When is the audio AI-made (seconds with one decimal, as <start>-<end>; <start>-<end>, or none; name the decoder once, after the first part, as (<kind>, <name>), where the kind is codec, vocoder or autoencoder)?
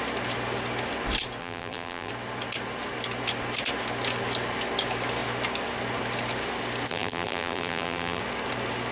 1.4-2.1 (vocoder, BigVGAN v2); 6.9-8.2